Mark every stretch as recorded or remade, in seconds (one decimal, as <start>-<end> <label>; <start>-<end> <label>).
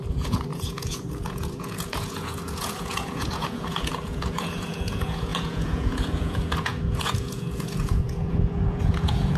0.0-9.4 remade